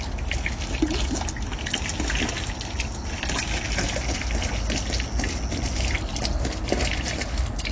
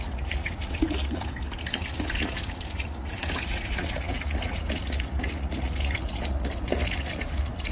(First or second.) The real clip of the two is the first